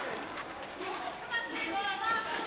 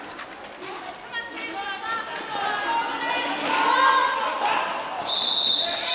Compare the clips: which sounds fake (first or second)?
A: first